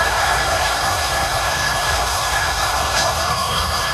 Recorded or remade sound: remade